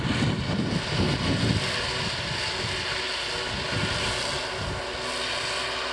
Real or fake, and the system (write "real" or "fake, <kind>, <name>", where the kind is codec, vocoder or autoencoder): real